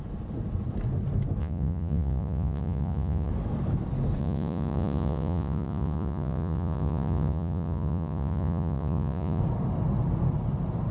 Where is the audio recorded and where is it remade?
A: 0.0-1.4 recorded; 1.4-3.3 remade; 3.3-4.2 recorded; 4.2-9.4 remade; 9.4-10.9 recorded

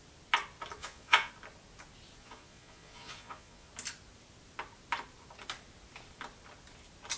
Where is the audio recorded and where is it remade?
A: 0.0-0.8 recorded; 0.8-1.3 remade; 1.3-2.2 recorded; 2.2-3.7 remade; 3.7-7.2 recorded

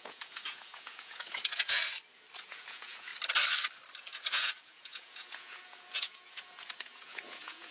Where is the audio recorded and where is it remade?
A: 0.0-1.8 remade; 1.8-2.4 recorded; 2.4-3.1 remade; 3.1-4.0 recorded; 4.0-7.7 remade

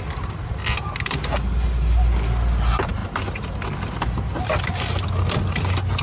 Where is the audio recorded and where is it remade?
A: 0.0-6.0 recorded

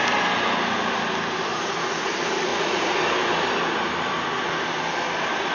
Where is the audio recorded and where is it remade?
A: 0.0-1.5 recorded; 1.5-2.1 remade; 2.1-2.5 recorded; 2.5-3.0 remade; 3.0-5.5 recorded